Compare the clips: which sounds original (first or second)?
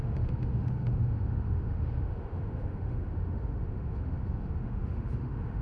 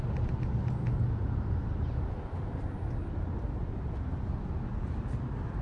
second